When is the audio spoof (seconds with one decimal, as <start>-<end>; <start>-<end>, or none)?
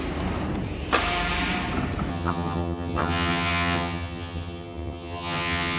2.1-5.8